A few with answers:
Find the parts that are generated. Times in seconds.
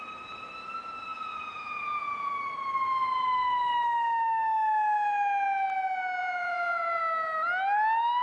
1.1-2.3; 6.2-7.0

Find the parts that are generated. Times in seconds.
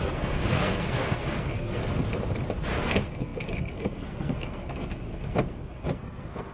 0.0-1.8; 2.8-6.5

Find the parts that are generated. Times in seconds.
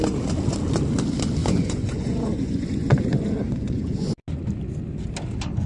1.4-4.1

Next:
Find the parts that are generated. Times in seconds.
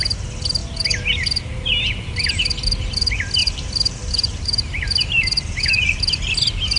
3.4-6.0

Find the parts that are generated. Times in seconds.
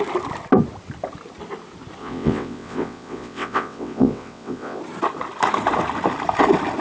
2.0-4.8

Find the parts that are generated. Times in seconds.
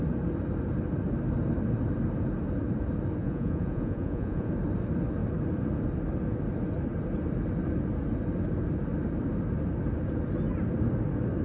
3.2-4.5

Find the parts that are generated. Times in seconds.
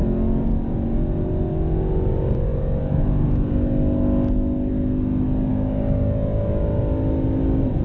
5.5-6.8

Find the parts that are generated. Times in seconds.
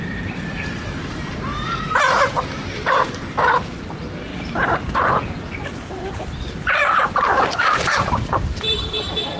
0.0-4.3; 5.9-9.4